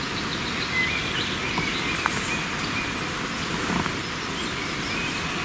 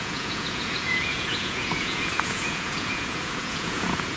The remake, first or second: second